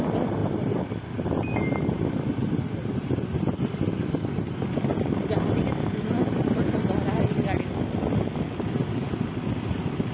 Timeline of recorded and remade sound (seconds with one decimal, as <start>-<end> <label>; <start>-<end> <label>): 0.0-10.1 recorded

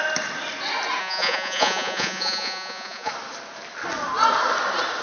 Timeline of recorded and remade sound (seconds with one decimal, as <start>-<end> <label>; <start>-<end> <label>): 0.0-1.0 recorded; 1.0-3.1 remade; 3.1-5.0 recorded

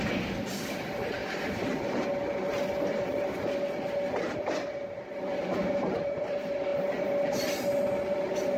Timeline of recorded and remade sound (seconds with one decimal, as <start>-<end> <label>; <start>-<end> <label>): 0.0-8.6 recorded

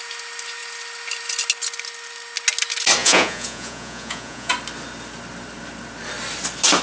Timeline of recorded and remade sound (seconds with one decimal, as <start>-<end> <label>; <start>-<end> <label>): 0.0-3.0 recorded; 3.0-4.5 remade; 4.5-6.8 recorded